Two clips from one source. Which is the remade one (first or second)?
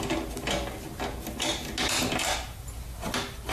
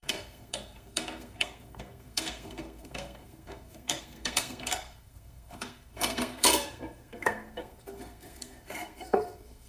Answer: second